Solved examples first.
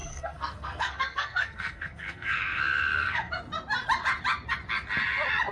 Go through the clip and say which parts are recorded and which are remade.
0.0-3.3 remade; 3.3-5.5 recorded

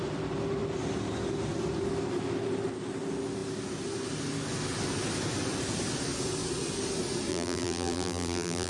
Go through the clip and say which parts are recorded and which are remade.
0.0-7.3 recorded; 7.3-8.7 remade

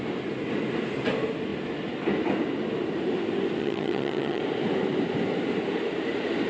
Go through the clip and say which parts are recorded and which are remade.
0.0-3.6 recorded; 3.6-4.4 remade; 4.4-6.5 recorded

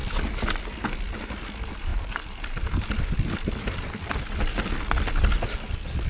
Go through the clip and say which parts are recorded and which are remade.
0.0-6.1 recorded

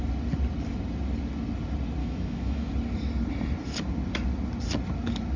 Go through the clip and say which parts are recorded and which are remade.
0.0-2.0 recorded; 2.0-2.7 remade; 2.7-5.4 recorded

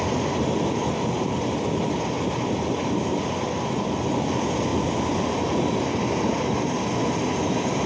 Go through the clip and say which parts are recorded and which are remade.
0.0-7.9 recorded

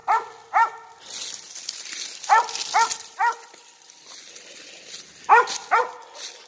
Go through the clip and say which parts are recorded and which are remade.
0.0-6.5 recorded

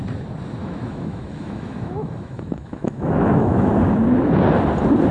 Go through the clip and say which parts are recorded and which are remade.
0.0-0.6 recorded; 0.6-3.7 remade; 3.7-5.1 recorded